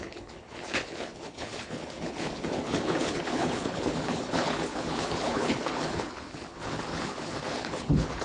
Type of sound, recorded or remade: remade